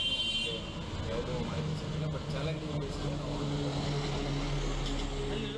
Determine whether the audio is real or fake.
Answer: real